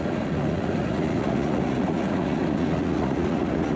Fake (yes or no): yes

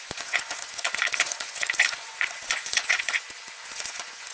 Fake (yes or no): yes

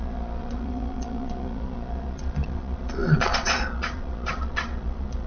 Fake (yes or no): yes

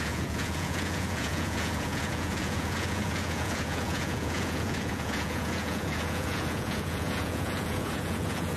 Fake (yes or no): yes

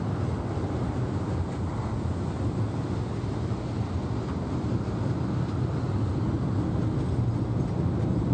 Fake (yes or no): no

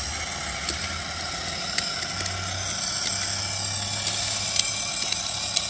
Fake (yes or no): no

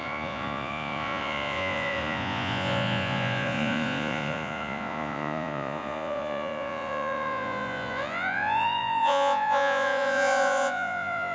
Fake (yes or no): yes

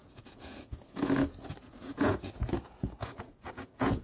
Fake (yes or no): yes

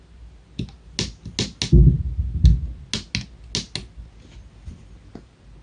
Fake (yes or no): no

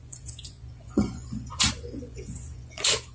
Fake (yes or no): yes